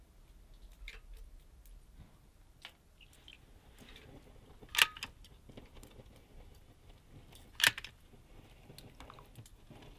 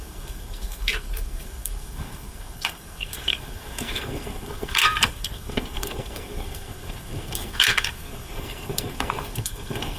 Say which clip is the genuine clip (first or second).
first